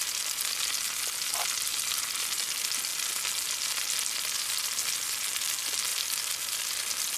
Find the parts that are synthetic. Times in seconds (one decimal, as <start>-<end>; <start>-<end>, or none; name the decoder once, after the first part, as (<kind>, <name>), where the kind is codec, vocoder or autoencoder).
none